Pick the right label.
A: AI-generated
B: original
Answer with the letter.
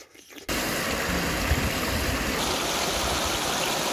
B